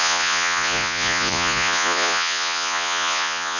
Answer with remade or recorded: remade